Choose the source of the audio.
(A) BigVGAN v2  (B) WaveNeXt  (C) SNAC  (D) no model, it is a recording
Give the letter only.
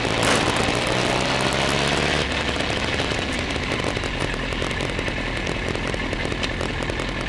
D